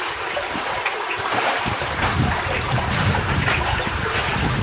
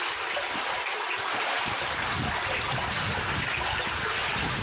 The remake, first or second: first